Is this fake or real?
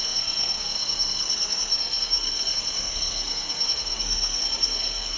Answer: fake